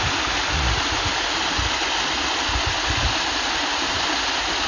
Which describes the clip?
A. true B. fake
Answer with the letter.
A